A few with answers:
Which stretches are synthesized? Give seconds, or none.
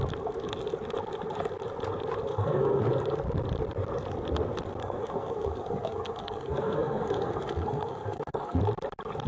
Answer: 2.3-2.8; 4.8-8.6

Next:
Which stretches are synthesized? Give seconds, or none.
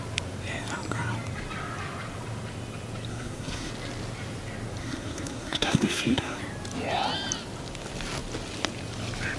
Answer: 3.1-3.7; 4.8-6.4